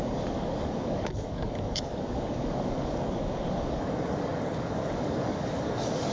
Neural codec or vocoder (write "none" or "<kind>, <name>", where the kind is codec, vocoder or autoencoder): codec, DAC